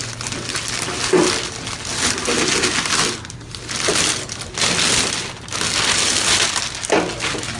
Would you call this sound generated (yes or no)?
no